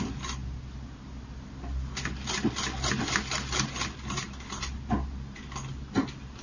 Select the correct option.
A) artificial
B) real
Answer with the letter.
B